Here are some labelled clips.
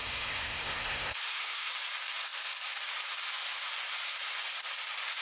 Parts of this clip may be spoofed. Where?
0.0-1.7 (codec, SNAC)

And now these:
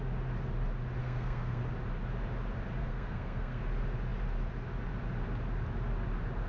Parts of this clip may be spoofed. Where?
1.0-1.6 (codec, SNAC); 2.8-3.6

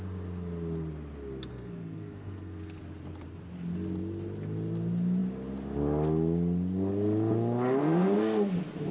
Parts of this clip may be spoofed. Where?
1.5-2.8 (codec, SNAC); 7.8-8.5

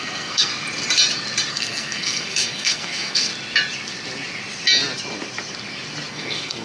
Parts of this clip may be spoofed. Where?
0.0-0.5 (codec, SNAC); 1.5-3.3; 6.1-6.6

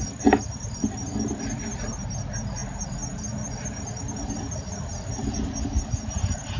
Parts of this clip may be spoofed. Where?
none

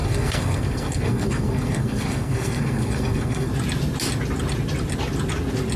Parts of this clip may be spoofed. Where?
0.0-3.5 (codec, SNAC)